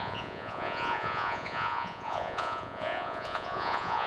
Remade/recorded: remade